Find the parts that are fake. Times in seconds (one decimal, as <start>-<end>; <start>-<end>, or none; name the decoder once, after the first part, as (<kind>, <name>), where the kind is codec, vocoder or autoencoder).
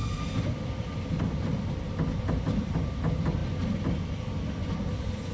none